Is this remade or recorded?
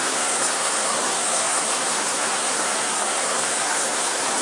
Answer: remade